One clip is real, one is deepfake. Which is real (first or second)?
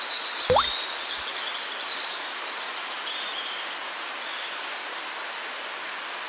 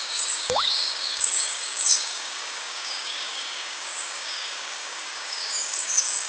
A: first